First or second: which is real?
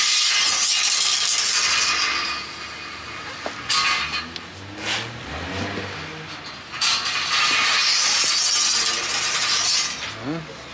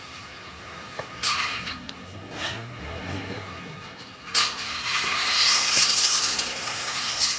first